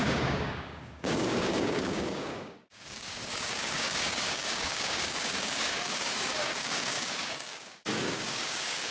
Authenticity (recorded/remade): remade